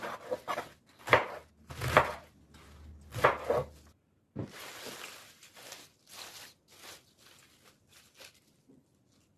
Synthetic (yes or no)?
no